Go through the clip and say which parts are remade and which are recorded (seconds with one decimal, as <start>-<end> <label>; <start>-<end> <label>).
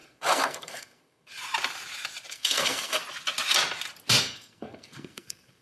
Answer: 0.0-1.3 remade; 1.3-2.3 recorded; 2.3-3.0 remade; 3.0-4.2 recorded; 4.2-5.6 remade